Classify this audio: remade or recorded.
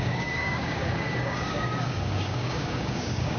remade